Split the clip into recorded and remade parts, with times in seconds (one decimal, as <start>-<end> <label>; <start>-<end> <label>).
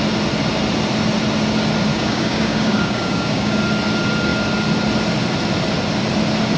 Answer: 0.0-1.9 recorded; 1.9-3.6 remade; 3.6-6.6 recorded